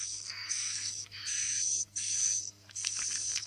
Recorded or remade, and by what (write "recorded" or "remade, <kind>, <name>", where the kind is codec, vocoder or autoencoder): remade, codec, SNAC